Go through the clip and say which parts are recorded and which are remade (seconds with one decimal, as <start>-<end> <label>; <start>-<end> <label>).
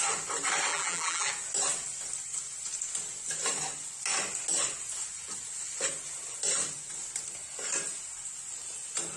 0.0-0.7 recorded; 0.7-1.3 remade; 1.3-9.2 recorded